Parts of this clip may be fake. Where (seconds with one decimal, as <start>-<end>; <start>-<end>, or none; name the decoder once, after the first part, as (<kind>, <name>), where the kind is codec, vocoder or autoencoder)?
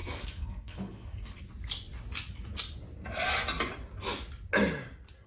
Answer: 0.0-1.4 (codec, SNAC)